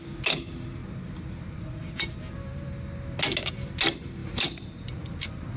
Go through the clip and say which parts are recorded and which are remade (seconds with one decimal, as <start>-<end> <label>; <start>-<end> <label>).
0.0-0.8 recorded; 0.8-2.7 remade; 2.7-4.2 recorded; 4.2-5.6 remade